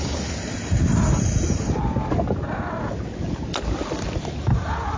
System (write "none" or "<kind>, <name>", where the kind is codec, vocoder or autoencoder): none